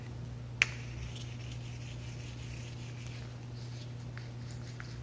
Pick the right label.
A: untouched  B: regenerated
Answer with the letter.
A